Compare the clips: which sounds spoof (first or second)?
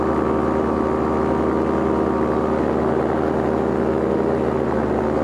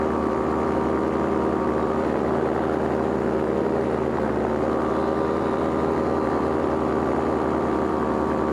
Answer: second